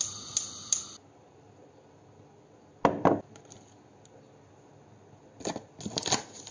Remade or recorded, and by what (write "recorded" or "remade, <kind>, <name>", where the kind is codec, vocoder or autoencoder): recorded